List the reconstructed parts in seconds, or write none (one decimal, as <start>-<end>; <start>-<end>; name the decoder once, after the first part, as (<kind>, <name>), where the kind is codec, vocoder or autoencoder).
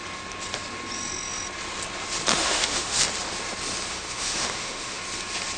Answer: 2.3-3.0 (autoencoder, DAC-VAE); 3.9-5.0